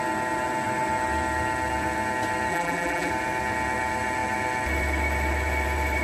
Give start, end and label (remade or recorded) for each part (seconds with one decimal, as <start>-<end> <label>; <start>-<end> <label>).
0.0-2.5 recorded; 2.5-3.1 remade; 3.1-6.0 recorded